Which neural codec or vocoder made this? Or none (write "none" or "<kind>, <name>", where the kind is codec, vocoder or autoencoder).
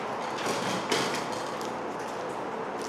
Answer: none